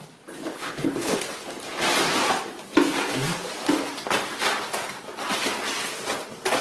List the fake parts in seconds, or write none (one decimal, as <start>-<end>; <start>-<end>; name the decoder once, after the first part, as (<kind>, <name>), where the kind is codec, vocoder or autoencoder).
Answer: 0.5-1.2 (codec, HILCodec)